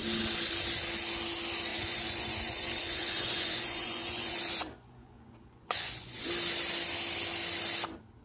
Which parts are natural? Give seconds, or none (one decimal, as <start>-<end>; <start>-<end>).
0.0-1.7; 6.3-8.2